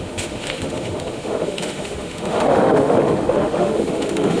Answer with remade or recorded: remade